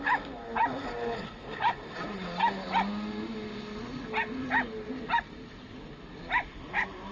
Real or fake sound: real